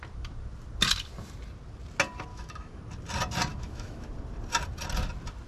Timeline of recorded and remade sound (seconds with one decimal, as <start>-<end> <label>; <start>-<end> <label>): 0.0-2.3 recorded; 2.3-2.8 remade; 2.8-3.5 recorded; 3.5-4.1 remade; 4.1-5.5 recorded